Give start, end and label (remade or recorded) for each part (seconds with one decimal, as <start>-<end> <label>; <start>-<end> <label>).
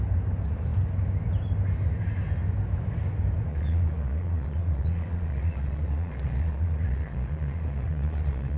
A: 0.0-3.5 recorded; 3.5-8.6 remade